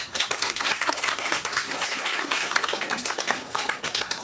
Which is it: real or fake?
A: fake